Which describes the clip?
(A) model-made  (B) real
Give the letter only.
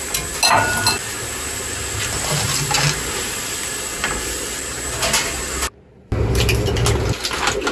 B